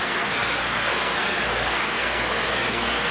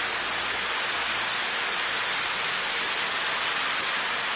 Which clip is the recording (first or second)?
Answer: second